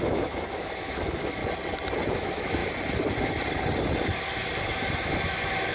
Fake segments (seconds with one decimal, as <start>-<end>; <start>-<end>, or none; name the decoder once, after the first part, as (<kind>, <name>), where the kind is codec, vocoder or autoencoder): 0.0-1.4 (autoencoder, DAC-VAE); 2.1-2.6; 4.6-5.7